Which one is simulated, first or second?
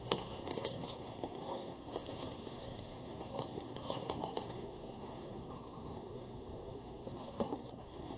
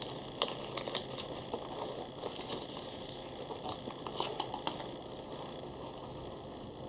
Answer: first